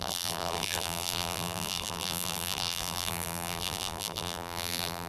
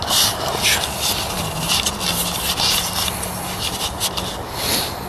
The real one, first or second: second